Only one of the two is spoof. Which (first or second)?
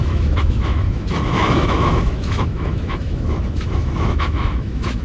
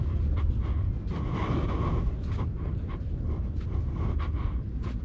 first